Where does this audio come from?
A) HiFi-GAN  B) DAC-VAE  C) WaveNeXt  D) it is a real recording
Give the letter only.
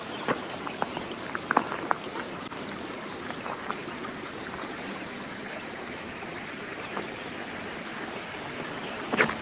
D